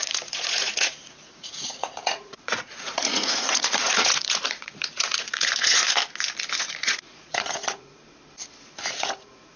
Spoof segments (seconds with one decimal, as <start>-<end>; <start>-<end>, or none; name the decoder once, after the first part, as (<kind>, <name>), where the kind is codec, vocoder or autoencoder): 0.0-6.0 (vocoder, Vocos); 6.6-8.0; 8.9-9.6